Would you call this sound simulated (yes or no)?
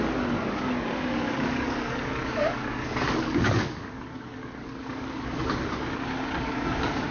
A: yes